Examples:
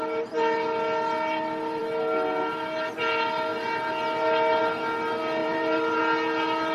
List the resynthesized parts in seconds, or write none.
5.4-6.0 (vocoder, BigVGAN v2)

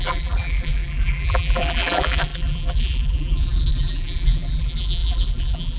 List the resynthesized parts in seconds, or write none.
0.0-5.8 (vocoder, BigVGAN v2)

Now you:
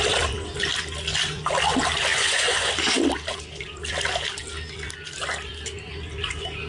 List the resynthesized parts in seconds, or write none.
2.1-2.7 (vocoder, Vocos)

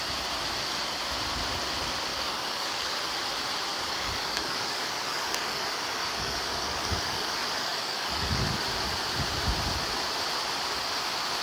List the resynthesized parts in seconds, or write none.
2.1-3.0 (codec, DAC); 3.7-8.5

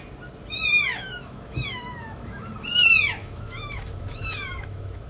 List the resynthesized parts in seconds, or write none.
0.9-2.5 (autoencoder, DAC-VAE); 3.2-5.1